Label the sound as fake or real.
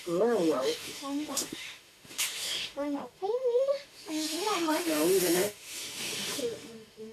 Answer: fake